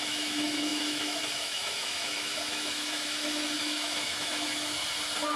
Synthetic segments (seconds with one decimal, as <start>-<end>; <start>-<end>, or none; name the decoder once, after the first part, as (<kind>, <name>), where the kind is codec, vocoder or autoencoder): 0.0-4.8 (autoencoder, DAC-VAE)